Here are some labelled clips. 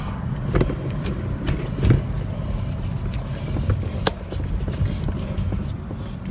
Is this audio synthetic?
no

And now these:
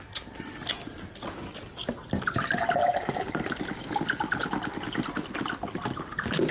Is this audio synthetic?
no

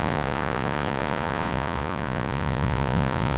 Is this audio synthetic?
yes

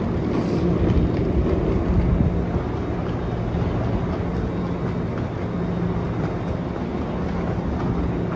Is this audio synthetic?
no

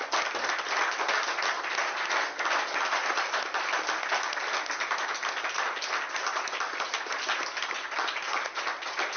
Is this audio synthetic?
no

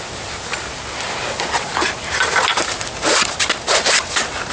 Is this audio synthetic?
no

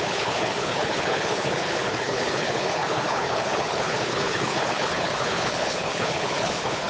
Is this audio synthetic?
yes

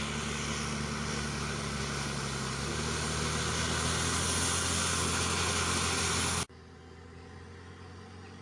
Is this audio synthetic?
no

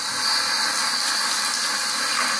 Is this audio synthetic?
no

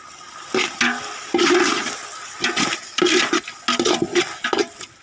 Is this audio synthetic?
no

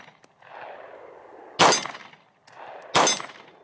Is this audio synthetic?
no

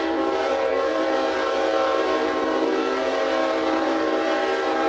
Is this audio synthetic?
yes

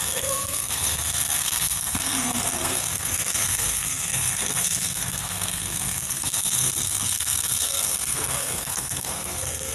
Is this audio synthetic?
yes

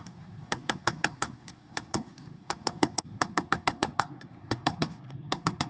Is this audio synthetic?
yes